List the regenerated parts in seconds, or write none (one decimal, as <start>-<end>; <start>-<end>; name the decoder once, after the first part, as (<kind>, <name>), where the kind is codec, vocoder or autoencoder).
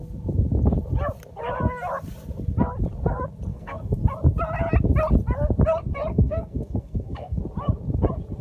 3.5-4.0 (codec, SNAC); 6.1-7.4